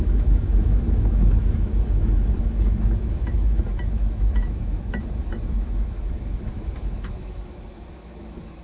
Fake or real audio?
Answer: fake